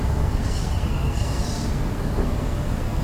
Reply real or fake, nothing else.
fake